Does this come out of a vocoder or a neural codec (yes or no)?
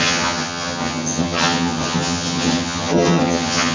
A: yes